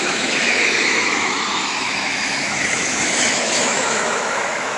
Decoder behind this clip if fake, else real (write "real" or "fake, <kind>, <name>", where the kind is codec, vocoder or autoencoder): fake, autoencoder, DAC-VAE